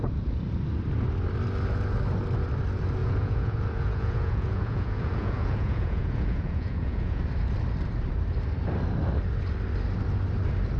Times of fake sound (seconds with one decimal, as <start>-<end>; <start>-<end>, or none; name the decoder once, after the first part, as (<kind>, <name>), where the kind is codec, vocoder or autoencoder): 3.0-7.2 (vocoder, Vocos)